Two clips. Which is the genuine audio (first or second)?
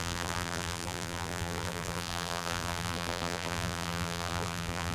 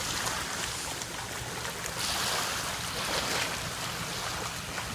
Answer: second